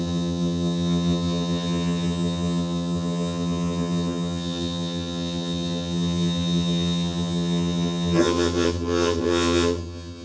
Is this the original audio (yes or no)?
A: no